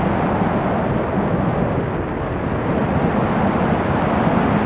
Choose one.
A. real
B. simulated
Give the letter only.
A